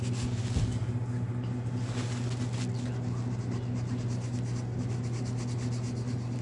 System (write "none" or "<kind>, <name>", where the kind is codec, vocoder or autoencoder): none